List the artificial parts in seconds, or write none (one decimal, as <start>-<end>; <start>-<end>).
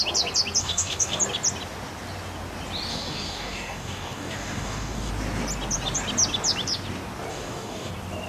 0.6-1.2; 2.9-5.1; 7.3-7.9